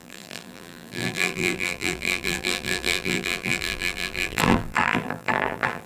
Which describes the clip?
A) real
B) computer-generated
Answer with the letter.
B